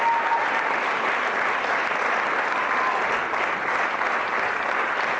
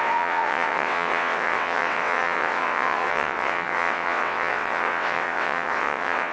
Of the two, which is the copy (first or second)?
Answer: second